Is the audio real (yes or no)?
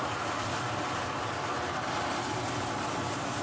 no